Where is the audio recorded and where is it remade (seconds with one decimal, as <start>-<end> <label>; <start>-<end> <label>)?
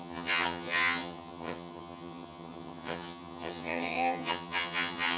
0.0-5.2 remade